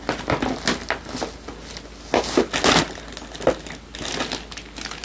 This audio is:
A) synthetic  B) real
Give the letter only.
B